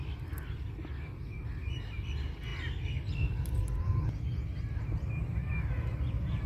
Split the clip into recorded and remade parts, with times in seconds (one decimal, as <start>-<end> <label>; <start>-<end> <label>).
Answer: 0.0-6.5 remade